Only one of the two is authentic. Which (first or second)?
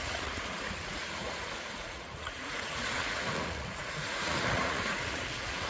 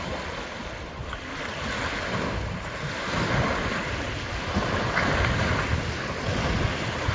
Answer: second